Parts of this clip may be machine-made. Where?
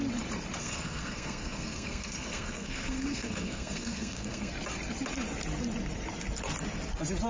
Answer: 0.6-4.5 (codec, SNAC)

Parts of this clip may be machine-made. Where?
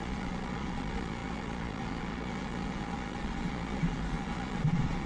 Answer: 0.0-5.1 (vocoder, Vocos)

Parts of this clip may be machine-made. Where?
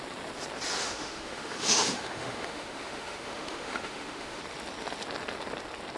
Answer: 0.8-4.4 (autoencoder, DAC-VAE)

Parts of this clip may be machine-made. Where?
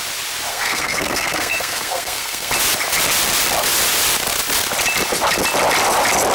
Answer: 0.5-2.5 (codec, SNAC)